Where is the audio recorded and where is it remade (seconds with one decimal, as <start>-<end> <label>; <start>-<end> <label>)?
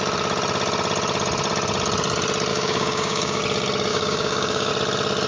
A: 0.0-2.5 recorded; 2.5-3.4 remade; 3.4-3.9 recorded; 3.9-4.7 remade; 4.7-5.3 recorded